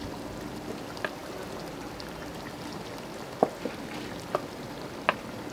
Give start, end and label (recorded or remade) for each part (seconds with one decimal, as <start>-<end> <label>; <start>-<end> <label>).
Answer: 0.0-5.5 recorded